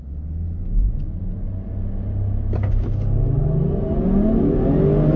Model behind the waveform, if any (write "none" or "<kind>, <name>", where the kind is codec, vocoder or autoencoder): none